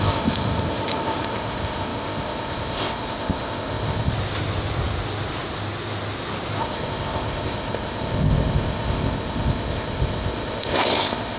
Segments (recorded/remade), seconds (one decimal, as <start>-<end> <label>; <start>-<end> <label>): 0.0-4.1 remade; 4.1-6.6 recorded; 6.6-11.4 remade